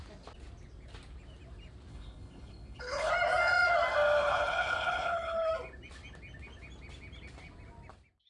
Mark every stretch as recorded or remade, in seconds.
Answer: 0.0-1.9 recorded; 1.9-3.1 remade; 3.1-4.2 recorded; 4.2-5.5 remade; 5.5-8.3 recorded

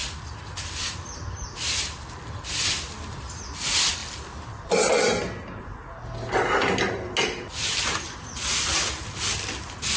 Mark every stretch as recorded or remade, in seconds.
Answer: 0.0-0.8 remade; 0.8-10.0 recorded

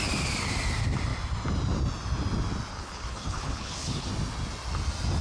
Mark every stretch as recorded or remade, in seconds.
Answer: 0.0-2.7 recorded; 2.7-4.1 remade; 4.1-5.2 recorded

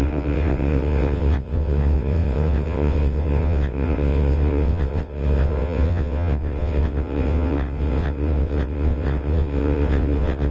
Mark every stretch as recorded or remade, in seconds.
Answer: 0.0-10.5 remade

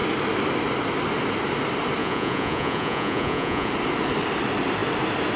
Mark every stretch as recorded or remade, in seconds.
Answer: 0.0-2.0 recorded; 2.0-3.7 remade; 3.7-5.4 recorded

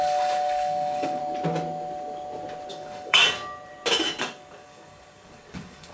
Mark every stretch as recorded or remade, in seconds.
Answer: 0.0-1.2 remade; 1.2-2.7 recorded; 2.7-3.2 remade; 3.2-4.2 recorded; 4.2-5.9 remade